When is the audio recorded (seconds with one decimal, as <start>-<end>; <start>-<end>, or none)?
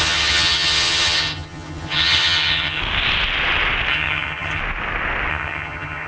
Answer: 2.8-3.9; 4.6-5.3